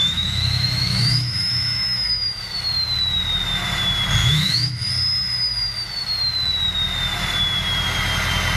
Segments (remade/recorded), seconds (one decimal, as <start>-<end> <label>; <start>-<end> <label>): 0.0-2.4 remade; 2.4-4.2 recorded; 4.2-4.9 remade; 4.9-8.6 recorded